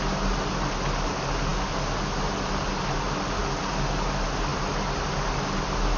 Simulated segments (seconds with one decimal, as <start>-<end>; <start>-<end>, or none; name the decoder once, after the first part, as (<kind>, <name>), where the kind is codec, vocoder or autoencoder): none